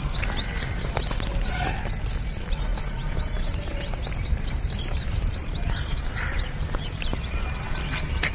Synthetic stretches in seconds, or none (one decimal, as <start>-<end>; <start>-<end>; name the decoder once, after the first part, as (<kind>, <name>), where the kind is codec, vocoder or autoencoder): 2.7-7.2 (vocoder, BigVGAN v2)